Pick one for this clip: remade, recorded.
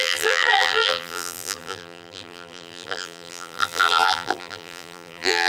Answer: remade